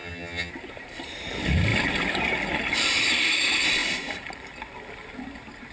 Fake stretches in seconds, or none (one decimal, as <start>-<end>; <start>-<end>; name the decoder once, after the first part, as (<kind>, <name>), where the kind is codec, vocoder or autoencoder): 0.0-0.5 (vocoder, HiFi-GAN)